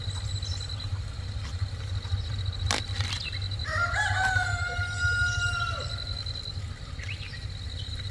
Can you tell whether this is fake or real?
real